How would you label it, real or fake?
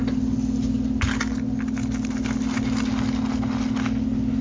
real